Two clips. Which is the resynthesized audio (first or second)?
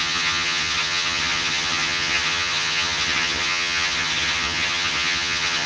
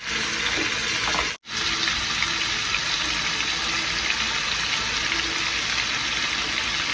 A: first